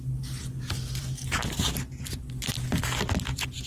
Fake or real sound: real